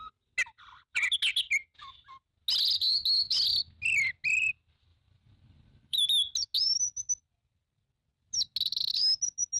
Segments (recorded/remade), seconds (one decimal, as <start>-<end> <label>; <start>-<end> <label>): 0.0-4.9 recorded; 4.9-6.0 remade; 6.0-9.6 recorded